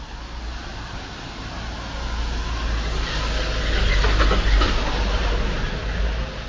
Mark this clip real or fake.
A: real